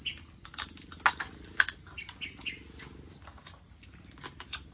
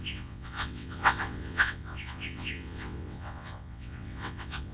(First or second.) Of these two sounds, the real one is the first